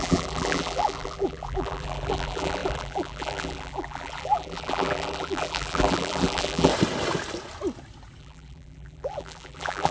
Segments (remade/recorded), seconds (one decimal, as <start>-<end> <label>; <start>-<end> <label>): 0.0-6.7 remade; 6.7-8.2 recorded; 8.2-9.9 remade